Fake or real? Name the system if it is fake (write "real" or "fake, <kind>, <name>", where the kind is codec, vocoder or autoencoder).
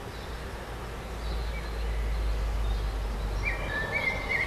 real